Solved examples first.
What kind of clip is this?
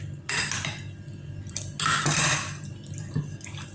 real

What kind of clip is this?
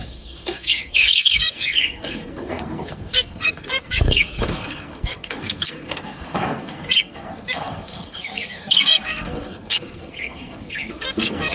fake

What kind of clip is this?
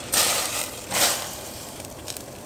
fake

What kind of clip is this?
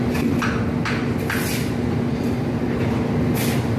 real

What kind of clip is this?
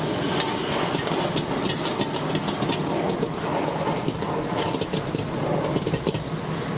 real